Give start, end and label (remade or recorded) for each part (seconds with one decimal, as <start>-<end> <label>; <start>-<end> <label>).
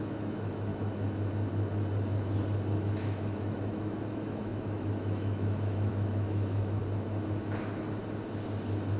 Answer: 0.0-0.7 remade; 0.7-2.8 recorded; 2.8-6.8 remade; 6.8-9.0 recorded